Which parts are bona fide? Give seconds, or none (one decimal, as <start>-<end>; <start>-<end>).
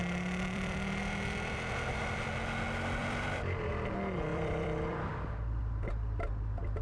2.3-3.0; 3.7-4.3; 5.6-6.8